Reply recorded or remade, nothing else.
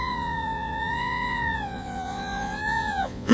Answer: remade